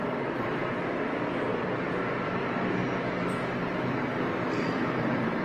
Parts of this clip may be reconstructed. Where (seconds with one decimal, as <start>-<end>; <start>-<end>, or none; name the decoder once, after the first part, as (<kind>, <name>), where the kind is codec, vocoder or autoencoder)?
0.0-1.5 (vocoder, BigVGAN v2); 4.7-5.4